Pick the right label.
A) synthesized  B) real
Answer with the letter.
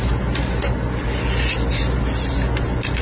B